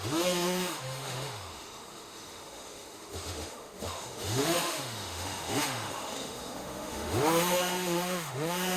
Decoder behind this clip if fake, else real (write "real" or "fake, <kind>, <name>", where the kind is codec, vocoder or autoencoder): fake, autoencoder, DAC-VAE